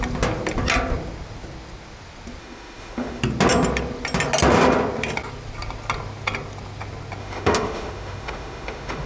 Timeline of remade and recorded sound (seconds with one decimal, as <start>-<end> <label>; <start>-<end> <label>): 0.0-2.4 recorded; 2.4-3.2 remade; 3.2-7.2 recorded; 7.2-9.1 remade